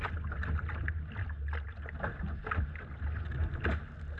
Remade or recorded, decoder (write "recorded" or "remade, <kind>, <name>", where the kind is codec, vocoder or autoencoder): recorded